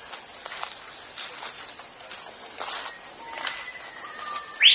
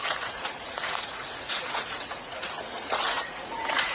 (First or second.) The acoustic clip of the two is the first